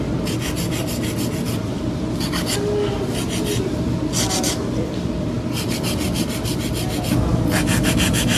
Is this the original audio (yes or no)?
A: yes